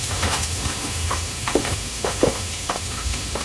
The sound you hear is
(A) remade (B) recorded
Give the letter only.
A